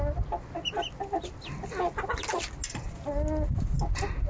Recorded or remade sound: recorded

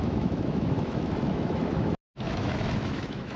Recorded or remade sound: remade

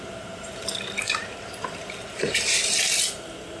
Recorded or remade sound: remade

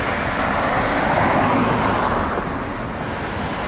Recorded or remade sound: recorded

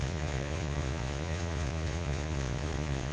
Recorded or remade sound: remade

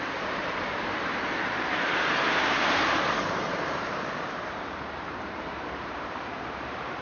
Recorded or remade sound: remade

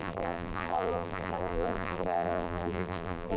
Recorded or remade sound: remade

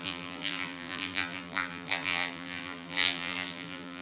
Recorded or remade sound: remade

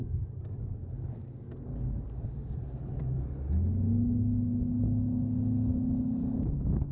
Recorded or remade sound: recorded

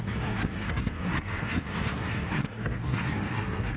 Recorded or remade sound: remade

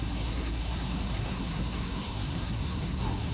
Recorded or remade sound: remade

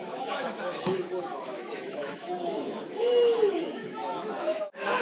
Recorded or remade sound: remade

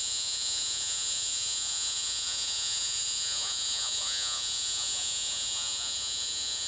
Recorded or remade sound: remade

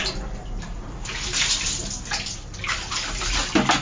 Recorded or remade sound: recorded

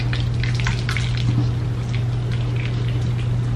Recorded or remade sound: recorded